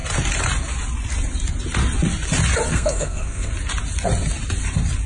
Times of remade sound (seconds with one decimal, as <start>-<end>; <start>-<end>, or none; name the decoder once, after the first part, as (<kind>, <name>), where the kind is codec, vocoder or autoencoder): 2.7-3.5 (codec, SNAC)